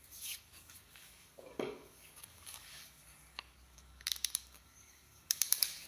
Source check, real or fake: fake